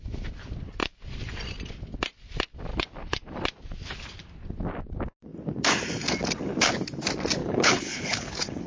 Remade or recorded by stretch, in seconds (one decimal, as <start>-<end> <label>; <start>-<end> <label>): 0.0-2.7 recorded; 2.7-3.2 remade; 3.2-7.4 recorded; 7.4-8.7 remade